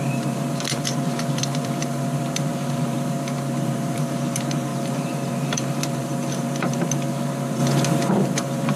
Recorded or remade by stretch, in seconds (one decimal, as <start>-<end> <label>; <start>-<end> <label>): 0.0-7.6 remade; 7.6-8.1 recorded; 8.1-8.8 remade